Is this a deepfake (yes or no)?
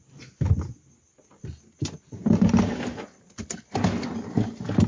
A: no